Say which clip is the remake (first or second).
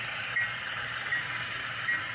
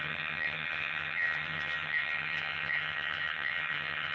second